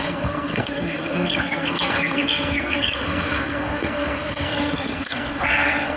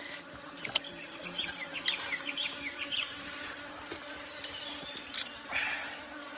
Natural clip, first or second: second